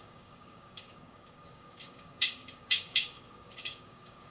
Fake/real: fake